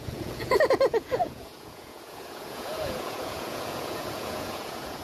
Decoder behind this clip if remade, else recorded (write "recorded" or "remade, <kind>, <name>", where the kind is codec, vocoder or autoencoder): remade, vocoder, Vocos